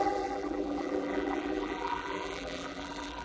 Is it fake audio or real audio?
fake